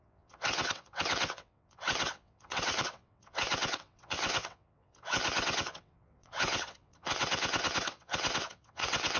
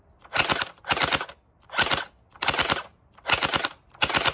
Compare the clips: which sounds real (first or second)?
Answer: second